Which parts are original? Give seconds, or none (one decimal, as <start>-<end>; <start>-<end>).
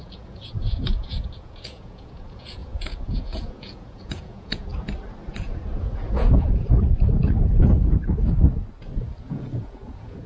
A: 4.7-5.3; 7.2-9.2